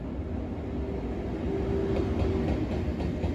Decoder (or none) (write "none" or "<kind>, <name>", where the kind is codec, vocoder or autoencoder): none